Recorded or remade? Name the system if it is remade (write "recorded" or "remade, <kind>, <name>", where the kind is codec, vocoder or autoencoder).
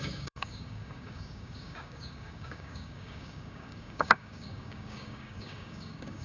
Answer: remade, codec, DAC